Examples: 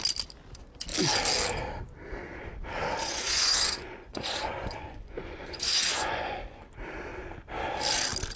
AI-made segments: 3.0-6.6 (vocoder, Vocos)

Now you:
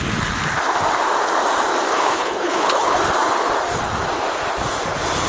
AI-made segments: 1.9-3.0 (codec, HILCodec)

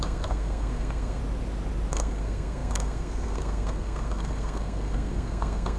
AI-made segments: 0.0-1.2 (codec, SNAC); 1.9-5.8

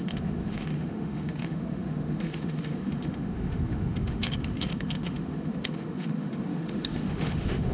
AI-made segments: 0.0-7.7 (autoencoder, DAC-VAE)

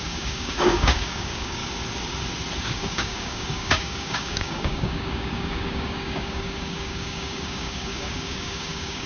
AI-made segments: 0.0-1.6 (codec, DAC); 2.6-9.1

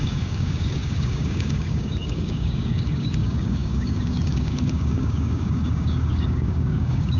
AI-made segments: 0.0-7.2 (codec, DAC)